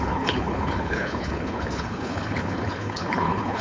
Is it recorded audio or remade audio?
remade